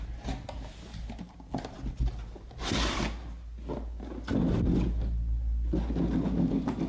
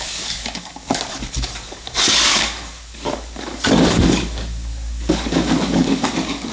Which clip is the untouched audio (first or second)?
first